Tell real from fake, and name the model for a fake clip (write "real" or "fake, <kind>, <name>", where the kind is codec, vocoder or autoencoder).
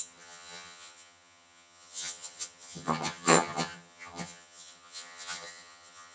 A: fake, vocoder, HiFi-GAN